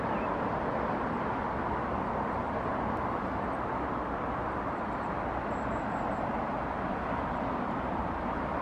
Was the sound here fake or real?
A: real